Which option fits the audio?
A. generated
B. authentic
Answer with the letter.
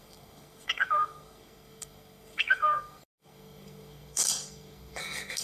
A